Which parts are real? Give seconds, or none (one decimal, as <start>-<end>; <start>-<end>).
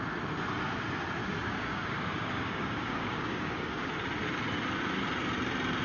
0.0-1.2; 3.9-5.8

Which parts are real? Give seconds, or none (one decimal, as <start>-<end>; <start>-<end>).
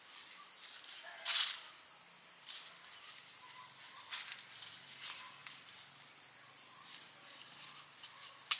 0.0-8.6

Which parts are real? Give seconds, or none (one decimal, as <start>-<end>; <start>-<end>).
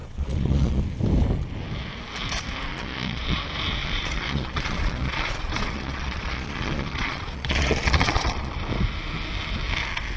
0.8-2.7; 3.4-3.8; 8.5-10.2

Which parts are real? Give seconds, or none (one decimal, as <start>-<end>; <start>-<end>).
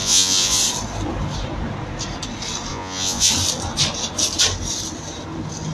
0.6-2.7; 3.3-5.7